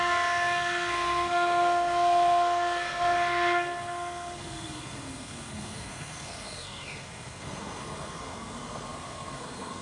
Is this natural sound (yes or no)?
no